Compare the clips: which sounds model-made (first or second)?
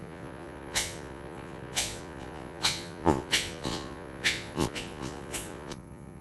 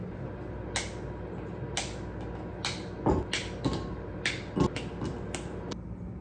first